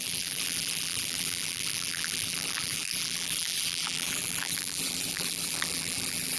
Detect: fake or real fake